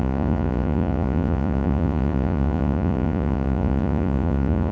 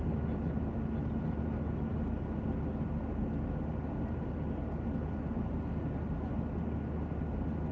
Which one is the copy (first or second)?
first